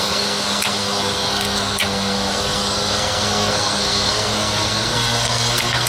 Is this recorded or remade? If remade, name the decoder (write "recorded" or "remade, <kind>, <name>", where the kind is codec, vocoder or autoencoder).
remade, codec, SNAC